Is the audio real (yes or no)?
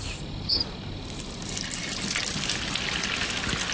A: yes